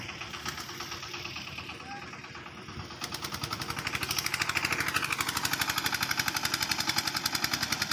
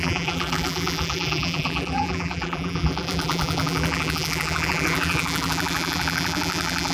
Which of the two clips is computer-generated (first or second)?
second